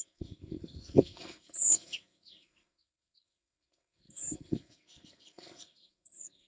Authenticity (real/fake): fake